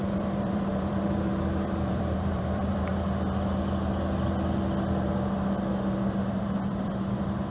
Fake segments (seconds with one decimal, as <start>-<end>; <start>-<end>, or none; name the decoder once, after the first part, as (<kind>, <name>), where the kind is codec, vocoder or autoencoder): 0.0-2.9 (vocoder, BigVGAN v2); 6.4-7.5